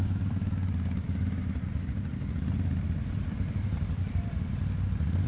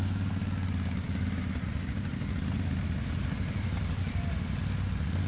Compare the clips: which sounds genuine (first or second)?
second